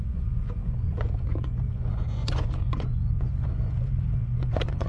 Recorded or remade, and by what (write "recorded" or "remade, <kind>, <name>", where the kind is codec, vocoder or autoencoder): remade, vocoder, Vocos